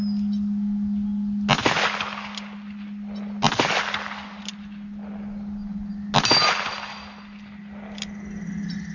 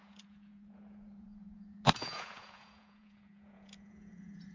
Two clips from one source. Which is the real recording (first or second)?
first